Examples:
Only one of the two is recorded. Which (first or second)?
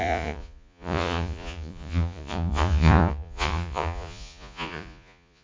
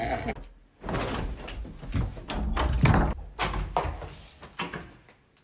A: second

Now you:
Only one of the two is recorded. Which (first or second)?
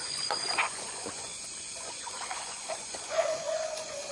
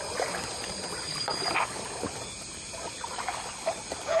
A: second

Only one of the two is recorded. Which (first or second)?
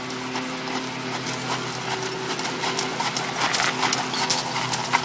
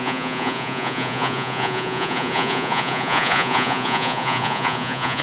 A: first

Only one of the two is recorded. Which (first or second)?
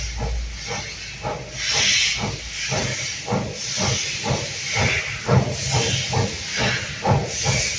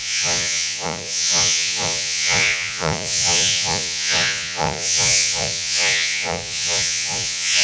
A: first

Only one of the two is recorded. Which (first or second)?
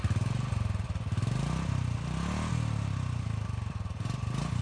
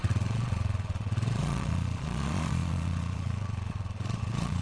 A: first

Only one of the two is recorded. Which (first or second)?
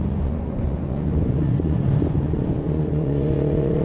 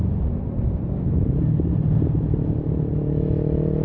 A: second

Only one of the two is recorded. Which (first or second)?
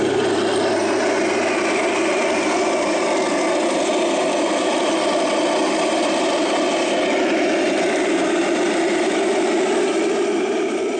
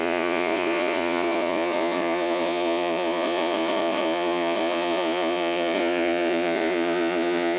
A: first